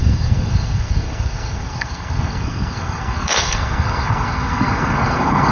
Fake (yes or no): yes